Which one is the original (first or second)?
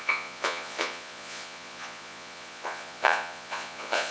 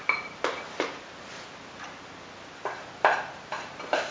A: second